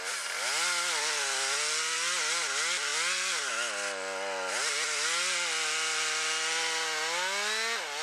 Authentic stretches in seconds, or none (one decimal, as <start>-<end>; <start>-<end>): 0.0-8.0